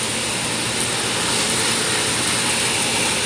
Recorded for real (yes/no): yes